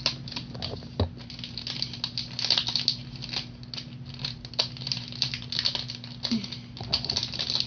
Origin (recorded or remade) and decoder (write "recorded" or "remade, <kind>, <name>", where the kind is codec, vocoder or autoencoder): recorded